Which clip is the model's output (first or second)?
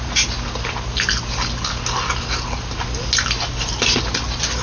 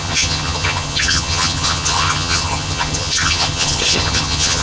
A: second